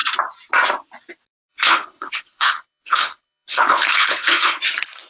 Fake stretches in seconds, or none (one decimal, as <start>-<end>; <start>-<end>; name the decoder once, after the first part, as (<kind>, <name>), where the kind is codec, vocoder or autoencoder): 1.5-4.6 (codec, HILCodec)